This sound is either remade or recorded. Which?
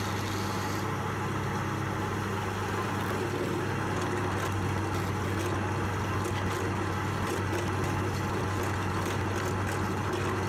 recorded